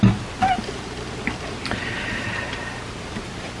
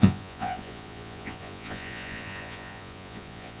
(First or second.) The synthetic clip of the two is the second